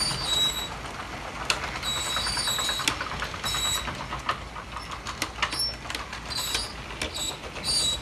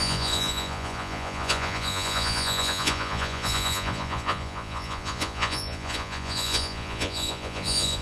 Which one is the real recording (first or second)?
first